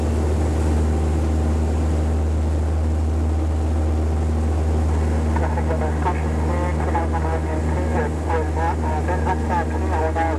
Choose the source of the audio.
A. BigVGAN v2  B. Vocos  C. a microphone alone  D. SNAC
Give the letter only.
C